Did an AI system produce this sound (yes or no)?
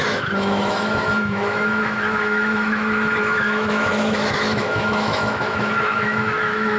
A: yes